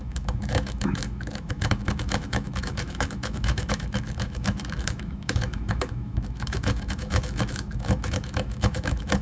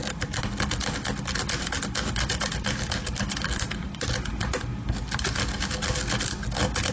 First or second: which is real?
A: second